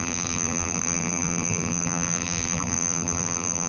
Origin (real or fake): fake